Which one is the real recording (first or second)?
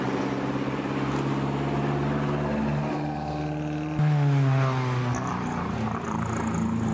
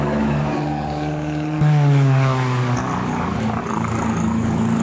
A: first